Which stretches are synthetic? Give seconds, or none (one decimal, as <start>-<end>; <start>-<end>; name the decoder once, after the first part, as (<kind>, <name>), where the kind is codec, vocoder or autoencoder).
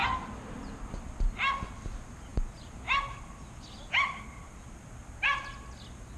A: none